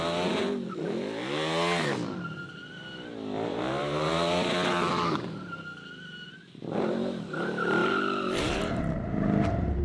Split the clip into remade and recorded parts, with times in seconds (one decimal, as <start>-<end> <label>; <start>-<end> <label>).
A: 0.0-3.5 recorded; 3.5-4.5 remade; 4.5-7.8 recorded; 7.8-8.8 remade; 8.8-9.8 recorded